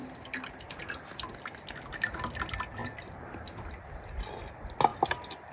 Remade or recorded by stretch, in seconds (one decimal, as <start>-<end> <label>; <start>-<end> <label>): 0.0-5.5 recorded